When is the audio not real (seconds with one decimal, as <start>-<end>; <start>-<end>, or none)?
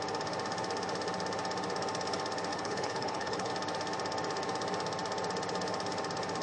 2.5-3.5